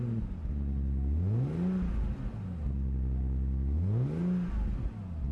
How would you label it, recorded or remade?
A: recorded